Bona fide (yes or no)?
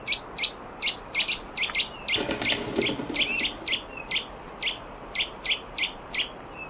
yes